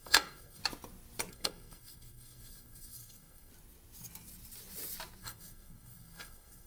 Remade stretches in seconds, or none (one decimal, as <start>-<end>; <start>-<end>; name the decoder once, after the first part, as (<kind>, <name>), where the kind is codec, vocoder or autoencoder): 0.0-0.6 (codec, SNAC); 1.3-3.5; 5.2-6.7